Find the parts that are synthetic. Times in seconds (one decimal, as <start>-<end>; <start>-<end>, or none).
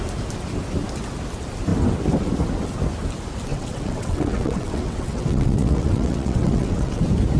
3.5-7.0